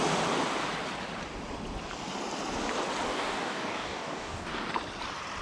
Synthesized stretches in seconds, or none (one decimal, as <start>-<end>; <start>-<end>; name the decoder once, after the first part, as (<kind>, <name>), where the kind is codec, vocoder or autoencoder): 3.1-4.7 (codec, DAC)